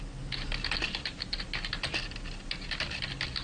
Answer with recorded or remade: recorded